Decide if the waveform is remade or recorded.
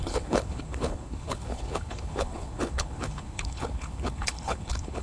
remade